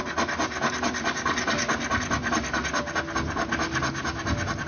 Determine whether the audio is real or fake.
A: real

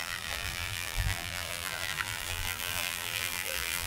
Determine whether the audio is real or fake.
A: fake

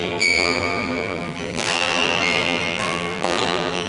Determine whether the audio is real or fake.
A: fake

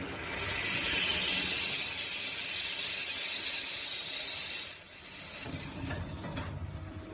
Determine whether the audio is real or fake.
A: real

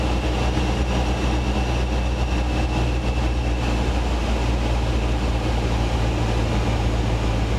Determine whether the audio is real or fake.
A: real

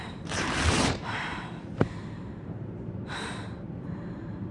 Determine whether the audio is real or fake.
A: fake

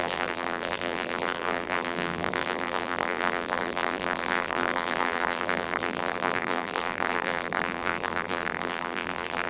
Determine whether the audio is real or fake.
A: fake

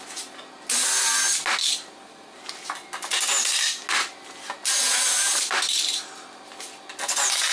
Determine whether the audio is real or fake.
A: real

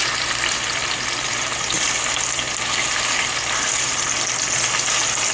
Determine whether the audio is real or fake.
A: real